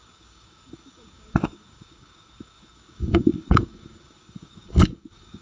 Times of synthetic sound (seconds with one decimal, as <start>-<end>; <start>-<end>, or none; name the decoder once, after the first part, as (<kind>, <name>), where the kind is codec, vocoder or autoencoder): 0.0-5.4 (codec, DAC)